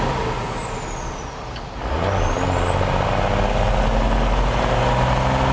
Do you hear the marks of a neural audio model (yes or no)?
no